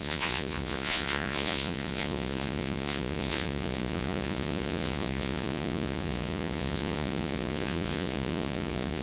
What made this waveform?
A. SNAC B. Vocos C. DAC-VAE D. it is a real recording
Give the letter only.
B